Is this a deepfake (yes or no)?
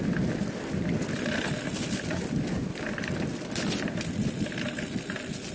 no